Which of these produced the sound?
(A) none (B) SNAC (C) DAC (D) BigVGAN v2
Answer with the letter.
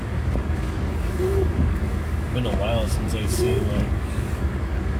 C